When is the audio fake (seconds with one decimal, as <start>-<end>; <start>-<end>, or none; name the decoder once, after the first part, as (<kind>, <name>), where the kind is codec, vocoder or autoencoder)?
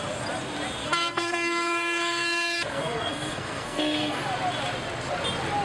0.8-4.2 (codec, SNAC)